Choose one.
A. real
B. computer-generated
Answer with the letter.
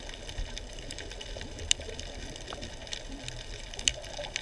A